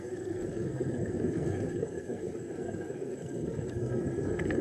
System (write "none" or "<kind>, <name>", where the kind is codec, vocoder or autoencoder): codec, SNAC